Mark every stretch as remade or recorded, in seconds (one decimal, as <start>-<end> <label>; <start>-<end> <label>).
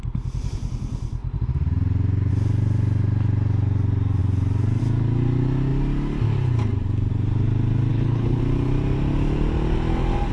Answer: 0.0-7.9 recorded; 7.9-8.4 remade; 8.4-10.3 recorded